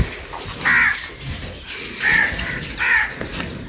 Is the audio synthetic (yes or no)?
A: no